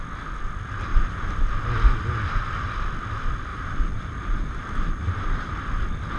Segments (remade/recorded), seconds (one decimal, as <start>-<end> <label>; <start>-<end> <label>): 0.0-0.9 recorded; 0.9-1.5 remade; 1.5-3.5 recorded; 3.5-5.5 remade; 5.5-6.2 recorded